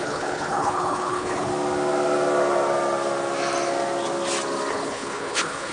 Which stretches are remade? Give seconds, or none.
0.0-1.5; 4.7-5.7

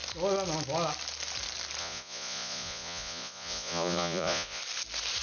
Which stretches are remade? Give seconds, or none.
1.8-4.6

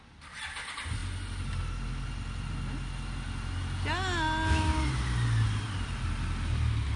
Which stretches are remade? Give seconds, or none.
none

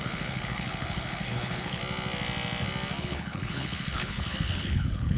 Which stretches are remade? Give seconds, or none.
0.0-1.8; 3.0-5.2

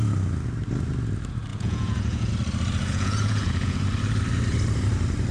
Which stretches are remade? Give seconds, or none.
1.5-2.3; 2.8-3.8

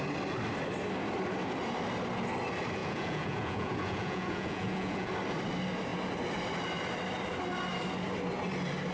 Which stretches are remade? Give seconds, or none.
2.8-5.1

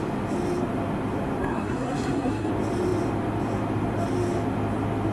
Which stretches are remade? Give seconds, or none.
1.4-2.5